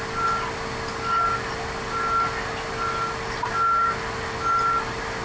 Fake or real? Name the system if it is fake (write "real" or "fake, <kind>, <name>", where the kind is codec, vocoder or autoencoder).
real